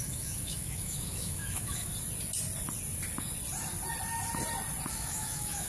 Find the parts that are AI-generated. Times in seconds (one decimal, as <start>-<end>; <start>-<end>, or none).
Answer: 0.0-1.9; 4.9-5.7

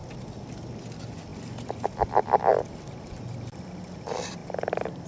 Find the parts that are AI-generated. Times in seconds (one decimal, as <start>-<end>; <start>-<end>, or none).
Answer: none

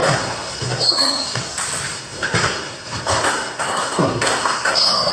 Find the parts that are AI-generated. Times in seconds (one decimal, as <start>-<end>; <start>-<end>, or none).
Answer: 0.0-1.4; 1.9-5.1

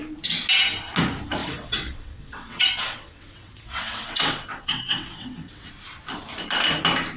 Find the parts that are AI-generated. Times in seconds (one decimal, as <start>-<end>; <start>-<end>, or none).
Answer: 1.4-5.7